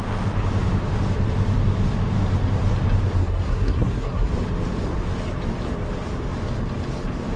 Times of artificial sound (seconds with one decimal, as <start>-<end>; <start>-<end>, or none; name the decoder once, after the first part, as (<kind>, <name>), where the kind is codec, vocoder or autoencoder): 3.2-4.3 (codec, SNAC)